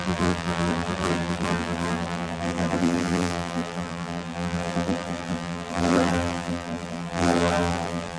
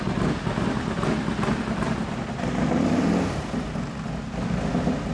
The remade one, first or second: first